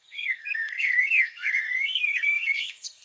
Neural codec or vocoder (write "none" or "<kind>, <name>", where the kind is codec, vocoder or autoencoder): codec, SNAC